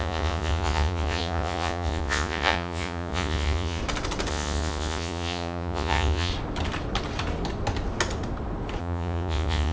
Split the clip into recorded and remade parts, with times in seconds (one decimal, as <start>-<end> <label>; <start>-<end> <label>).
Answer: 0.0-3.8 remade; 3.8-4.3 recorded; 4.3-6.3 remade; 6.3-8.8 recorded; 8.8-9.7 remade